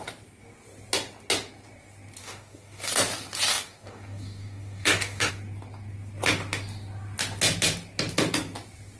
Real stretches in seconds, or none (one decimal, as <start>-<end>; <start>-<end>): 0.0-2.2; 2.9-3.5; 5.3-9.0